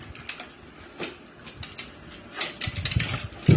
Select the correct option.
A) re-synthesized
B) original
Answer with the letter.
B